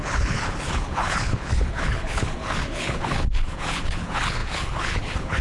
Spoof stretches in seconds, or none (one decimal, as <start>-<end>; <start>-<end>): 0.0-5.4